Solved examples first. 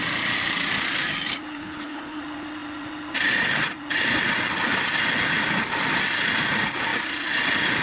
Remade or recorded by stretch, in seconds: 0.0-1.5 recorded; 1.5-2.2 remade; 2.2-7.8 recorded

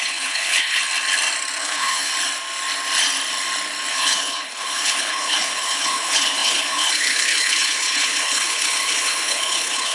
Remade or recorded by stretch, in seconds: 0.0-0.8 remade; 0.8-1.6 recorded; 1.6-2.1 remade; 2.1-3.9 recorded; 3.9-9.9 remade